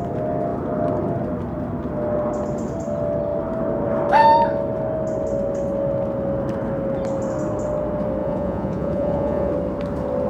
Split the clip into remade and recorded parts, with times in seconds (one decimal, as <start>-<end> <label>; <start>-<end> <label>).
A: 0.0-8.2 recorded; 8.2-9.5 remade; 9.5-10.3 recorded